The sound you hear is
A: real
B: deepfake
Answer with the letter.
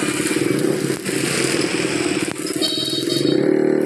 A